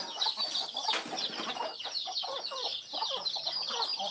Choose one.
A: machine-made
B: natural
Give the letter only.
B